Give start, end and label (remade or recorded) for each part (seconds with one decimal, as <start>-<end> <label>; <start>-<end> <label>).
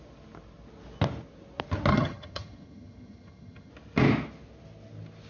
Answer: 0.0-1.9 recorded; 1.9-3.7 remade; 3.7-5.3 recorded